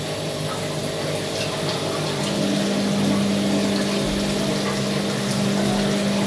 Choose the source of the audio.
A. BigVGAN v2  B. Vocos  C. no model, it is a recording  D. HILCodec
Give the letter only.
C